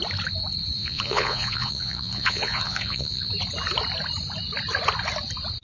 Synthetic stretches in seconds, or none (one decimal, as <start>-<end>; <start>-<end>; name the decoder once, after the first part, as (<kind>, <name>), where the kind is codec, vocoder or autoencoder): 0.8-3.3 (vocoder, Vocos)